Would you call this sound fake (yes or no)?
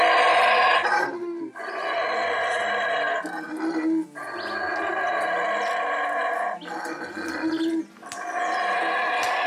no